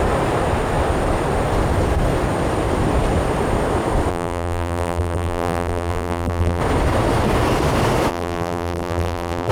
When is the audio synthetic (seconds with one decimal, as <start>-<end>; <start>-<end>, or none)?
4.1-6.6; 8.1-9.5